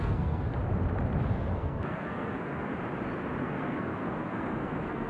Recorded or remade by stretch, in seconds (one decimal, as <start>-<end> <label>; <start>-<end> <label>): 0.0-0.5 remade; 0.5-1.3 recorded; 1.3-2.7 remade; 2.7-3.4 recorded; 3.4-5.1 remade